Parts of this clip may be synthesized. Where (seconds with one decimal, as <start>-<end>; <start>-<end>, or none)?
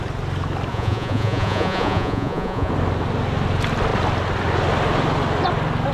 0.7-2.7